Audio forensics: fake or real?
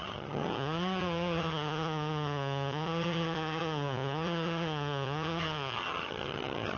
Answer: fake